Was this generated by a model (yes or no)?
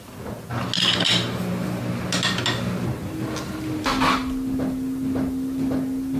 no